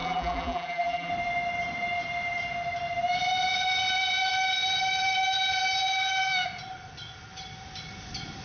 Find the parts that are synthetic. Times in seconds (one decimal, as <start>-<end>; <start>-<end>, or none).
0.0-1.1